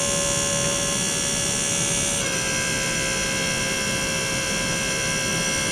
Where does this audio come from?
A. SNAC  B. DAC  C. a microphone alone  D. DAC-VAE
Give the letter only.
C